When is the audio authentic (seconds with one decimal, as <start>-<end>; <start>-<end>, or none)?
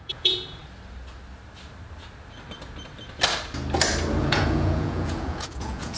0.6-4.2